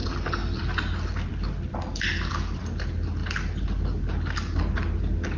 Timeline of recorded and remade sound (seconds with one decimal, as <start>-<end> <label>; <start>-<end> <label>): 0.0-5.4 recorded